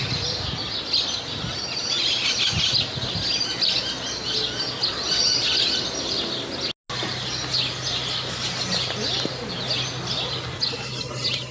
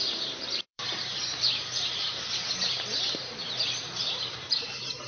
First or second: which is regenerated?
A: second